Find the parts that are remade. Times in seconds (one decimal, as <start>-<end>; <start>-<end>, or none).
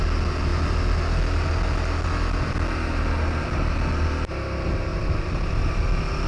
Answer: 4.9-5.7